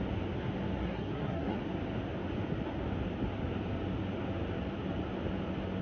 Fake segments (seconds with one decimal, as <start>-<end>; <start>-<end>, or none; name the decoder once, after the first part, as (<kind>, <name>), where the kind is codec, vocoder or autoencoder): 0.8-1.6 (codec, SNAC)